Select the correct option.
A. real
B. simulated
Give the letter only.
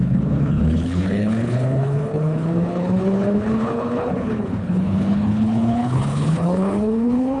B